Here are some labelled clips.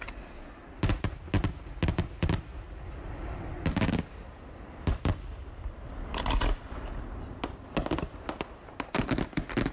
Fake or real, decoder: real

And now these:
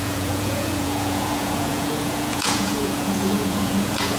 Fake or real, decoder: fake, vocoder, Vocos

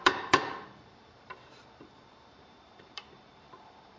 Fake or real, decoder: fake, vocoder, BigVGAN v2